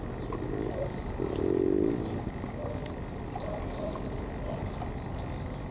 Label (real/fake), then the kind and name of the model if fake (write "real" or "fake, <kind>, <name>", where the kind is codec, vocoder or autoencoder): real